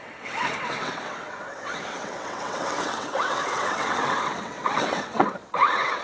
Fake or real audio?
fake